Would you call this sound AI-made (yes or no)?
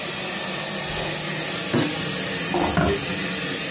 no